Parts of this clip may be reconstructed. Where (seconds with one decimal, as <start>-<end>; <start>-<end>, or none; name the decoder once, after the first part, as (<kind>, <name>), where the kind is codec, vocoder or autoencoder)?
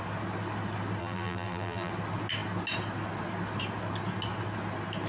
1.0-1.9 (vocoder, BigVGAN v2)